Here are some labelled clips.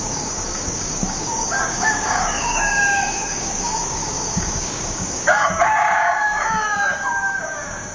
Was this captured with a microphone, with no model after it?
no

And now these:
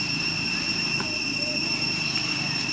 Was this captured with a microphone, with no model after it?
no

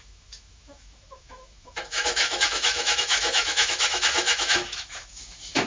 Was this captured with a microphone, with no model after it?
no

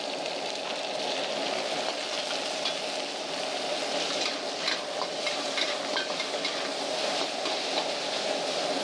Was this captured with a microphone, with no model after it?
yes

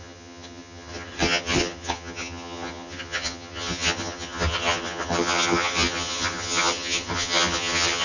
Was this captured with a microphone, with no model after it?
no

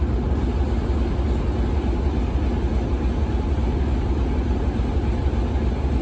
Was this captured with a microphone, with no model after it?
yes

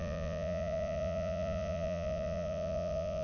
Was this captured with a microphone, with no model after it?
no